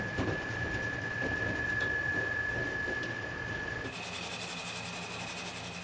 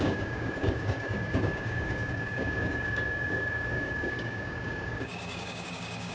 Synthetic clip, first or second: second